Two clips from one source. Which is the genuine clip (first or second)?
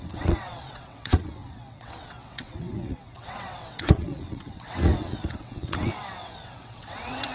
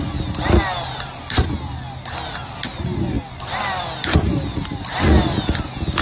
second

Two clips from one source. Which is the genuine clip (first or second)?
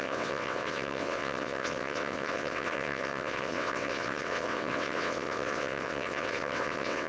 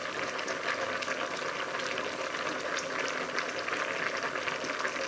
second